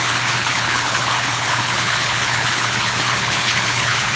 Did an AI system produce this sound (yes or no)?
yes